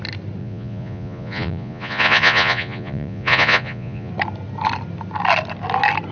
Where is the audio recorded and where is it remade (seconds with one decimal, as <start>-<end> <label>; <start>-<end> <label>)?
0.0-0.4 recorded; 0.4-4.1 remade; 4.1-6.1 recorded